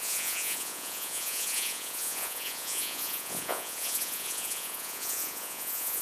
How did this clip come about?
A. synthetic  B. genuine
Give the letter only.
A